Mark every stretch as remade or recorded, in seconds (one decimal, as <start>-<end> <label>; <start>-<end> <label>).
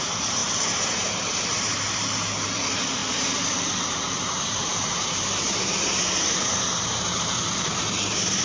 0.0-3.0 remade; 3.0-4.2 recorded; 4.2-8.4 remade